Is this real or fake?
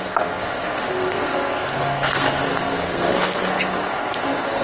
fake